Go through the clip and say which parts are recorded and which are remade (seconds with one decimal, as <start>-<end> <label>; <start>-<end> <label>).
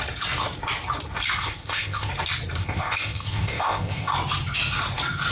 0.0-1.4 recorded; 1.4-2.1 remade; 2.1-2.6 recorded; 2.6-4.1 remade; 4.1-5.3 recorded